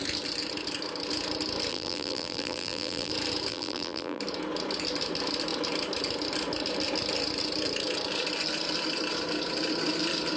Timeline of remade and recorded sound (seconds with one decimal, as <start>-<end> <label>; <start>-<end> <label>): 0.0-1.7 recorded; 1.7-3.1 remade; 3.1-3.5 recorded; 3.5-4.2 remade; 4.2-10.4 recorded